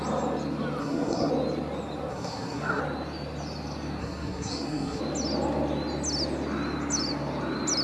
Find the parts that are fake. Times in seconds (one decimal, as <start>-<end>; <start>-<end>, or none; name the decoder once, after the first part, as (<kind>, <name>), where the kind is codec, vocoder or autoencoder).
0.8-1.3 (codec, SNAC); 2.1-2.8; 4.0-5.0